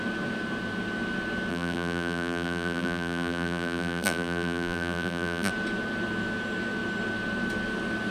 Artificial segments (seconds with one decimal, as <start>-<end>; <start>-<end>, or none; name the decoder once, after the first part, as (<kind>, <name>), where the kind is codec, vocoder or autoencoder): 1.5-5.5 (vocoder, BigVGAN v2)

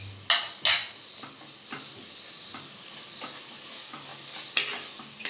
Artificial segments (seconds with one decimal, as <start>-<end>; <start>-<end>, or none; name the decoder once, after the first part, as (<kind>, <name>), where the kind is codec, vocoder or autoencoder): none

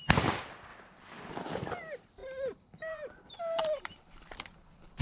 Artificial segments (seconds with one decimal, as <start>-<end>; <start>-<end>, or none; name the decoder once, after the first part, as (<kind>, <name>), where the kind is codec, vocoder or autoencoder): 0.0-0.7 (vocoder, BigVGAN v2); 1.3-5.0

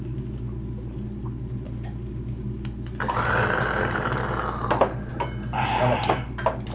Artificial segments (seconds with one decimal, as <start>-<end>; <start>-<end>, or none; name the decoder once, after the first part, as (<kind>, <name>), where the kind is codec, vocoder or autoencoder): 5.1-5.8 (vocoder, BigVGAN v2)

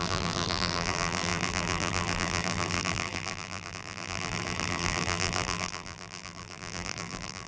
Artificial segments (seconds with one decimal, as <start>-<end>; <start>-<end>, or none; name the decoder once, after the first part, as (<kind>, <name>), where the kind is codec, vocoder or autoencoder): 0.0-7.5 (vocoder, BigVGAN v2)

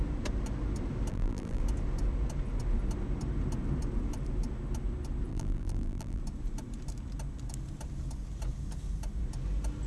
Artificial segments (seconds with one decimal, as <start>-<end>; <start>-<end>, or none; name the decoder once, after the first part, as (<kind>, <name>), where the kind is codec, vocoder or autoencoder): 1.1-1.6 (vocoder, BigVGAN v2); 5.3-6.2

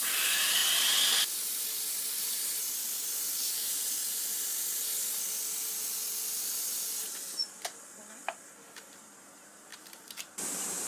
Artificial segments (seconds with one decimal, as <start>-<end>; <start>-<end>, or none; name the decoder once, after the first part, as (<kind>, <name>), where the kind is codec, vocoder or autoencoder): 0.0-0.6 (vocoder, BigVGAN v2); 2.2-2.6; 3.4-4.0; 9.0-10.9